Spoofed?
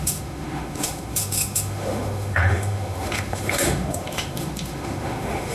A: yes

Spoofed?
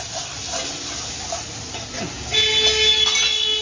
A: no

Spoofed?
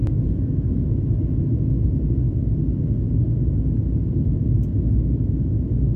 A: no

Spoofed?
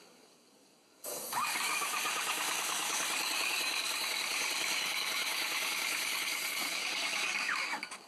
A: yes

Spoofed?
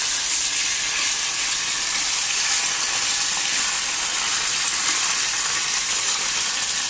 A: no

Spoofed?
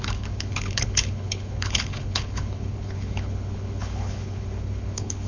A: yes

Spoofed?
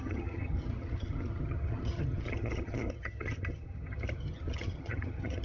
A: yes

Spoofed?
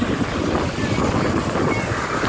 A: no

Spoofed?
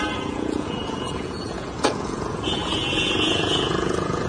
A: yes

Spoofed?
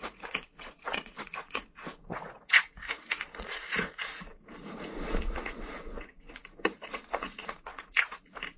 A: yes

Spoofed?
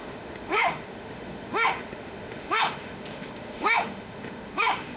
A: yes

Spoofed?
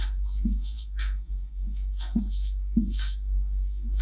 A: yes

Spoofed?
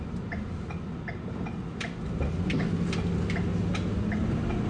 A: no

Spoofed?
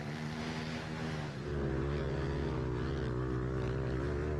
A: no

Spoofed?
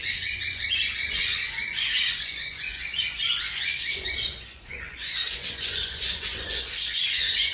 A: yes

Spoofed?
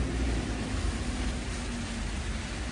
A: no